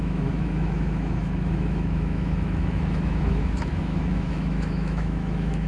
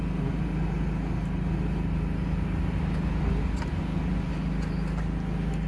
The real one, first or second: second